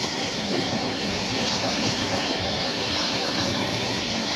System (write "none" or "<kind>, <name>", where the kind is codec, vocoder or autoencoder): codec, SNAC